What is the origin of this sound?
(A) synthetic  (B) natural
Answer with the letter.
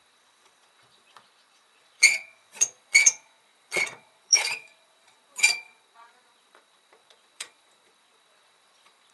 A